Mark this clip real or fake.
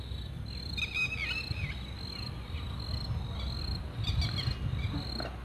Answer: real